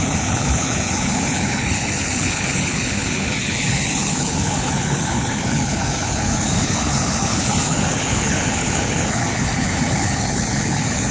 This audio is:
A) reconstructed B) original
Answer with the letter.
A